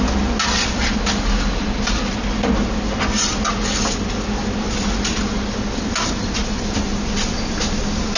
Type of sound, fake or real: real